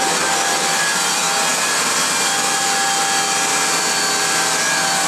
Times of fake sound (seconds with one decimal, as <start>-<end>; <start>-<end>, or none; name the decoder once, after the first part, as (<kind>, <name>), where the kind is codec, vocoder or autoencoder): none